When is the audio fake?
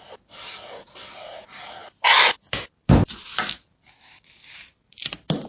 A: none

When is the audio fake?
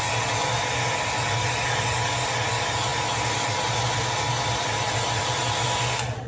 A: none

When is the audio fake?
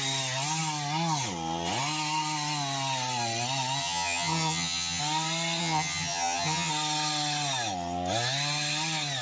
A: 3.8-5.0 (vocoder, HiFi-GAN); 5.6-6.7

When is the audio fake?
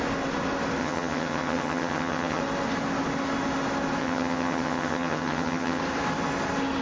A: 0.8-2.4 (vocoder, HiFi-GAN); 4.0-5.8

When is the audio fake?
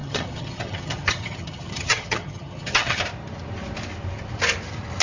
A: 0.0-3.0 (vocoder, HiFi-GAN)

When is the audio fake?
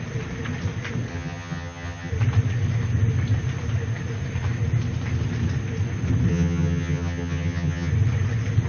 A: 1.1-2.1 (vocoder, HiFi-GAN); 6.3-7.9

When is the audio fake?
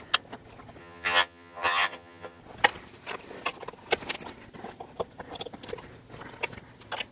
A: 0.8-2.4 (vocoder, HiFi-GAN)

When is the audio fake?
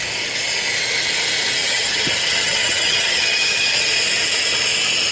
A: 1.6-3.9 (vocoder, HiFi-GAN)